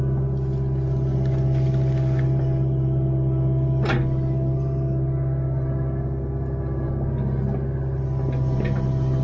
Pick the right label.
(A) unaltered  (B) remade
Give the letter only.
A